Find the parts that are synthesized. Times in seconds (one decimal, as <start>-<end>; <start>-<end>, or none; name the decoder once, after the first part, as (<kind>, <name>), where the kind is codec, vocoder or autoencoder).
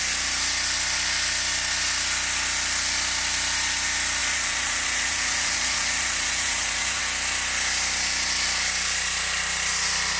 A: 4.2-7.0 (vocoder, Vocos)